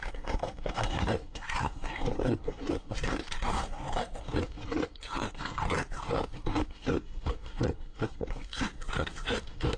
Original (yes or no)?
no